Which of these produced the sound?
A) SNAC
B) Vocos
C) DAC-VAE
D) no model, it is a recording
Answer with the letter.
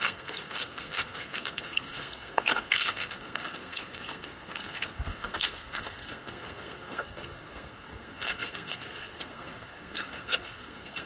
A